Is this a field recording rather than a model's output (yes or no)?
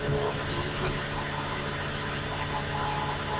yes